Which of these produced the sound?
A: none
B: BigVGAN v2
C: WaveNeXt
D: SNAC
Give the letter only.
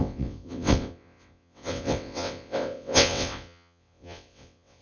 C